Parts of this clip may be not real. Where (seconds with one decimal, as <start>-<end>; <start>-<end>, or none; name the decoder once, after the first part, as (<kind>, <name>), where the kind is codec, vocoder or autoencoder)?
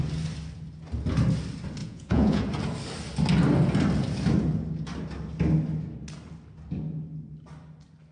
1.8-2.4 (vocoder, Vocos)